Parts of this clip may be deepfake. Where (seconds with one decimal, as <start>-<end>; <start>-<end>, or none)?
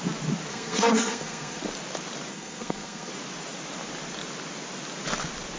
0.5-1.6; 2.3-3.1